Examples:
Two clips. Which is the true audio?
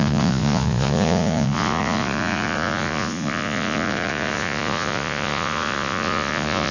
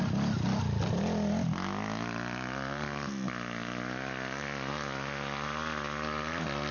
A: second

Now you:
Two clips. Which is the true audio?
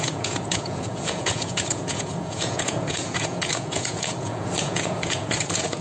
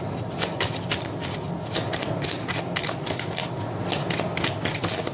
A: second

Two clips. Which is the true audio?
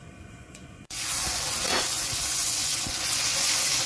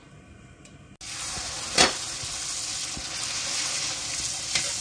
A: second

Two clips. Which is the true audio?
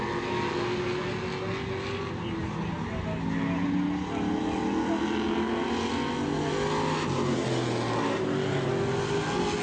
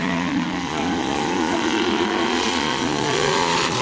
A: first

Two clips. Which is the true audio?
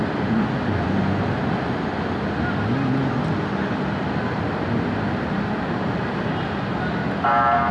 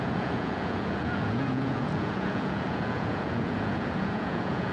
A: first